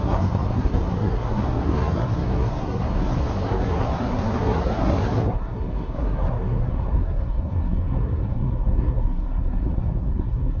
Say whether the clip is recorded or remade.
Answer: remade